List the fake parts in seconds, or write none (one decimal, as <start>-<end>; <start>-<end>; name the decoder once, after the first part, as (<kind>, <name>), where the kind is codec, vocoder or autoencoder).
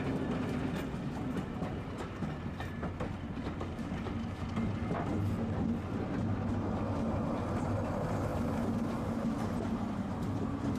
none